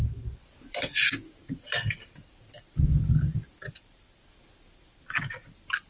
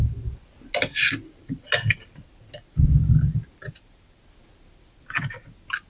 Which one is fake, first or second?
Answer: first